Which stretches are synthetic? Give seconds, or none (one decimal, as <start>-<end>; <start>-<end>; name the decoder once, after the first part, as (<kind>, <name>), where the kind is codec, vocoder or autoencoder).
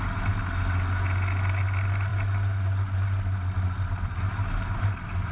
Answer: none